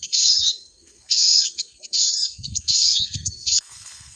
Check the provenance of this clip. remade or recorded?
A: remade